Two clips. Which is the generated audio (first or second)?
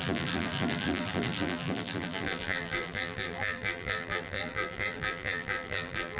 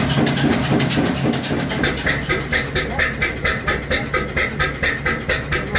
first